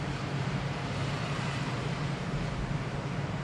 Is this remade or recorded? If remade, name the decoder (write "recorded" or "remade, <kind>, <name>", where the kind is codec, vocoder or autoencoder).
remade, vocoder, BigVGAN v2